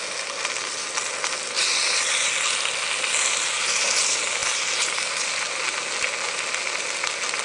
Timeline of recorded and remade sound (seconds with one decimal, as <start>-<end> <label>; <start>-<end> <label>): 0.0-7.4 recorded